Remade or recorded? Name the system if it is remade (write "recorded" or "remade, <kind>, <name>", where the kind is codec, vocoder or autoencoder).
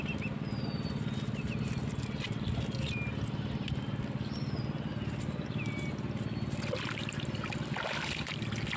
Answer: recorded